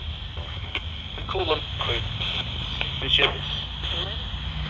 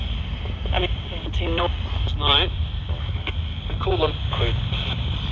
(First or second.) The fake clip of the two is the second